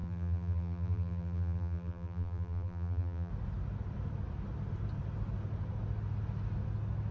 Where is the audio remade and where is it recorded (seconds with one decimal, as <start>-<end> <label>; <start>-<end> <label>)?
0.0-3.3 remade; 3.3-7.1 recorded